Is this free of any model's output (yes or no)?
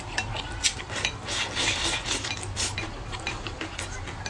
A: yes